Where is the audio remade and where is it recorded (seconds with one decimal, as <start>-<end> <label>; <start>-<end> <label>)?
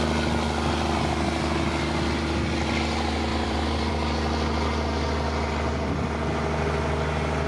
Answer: 0.0-3.3 recorded; 3.3-3.9 remade; 3.9-7.5 recorded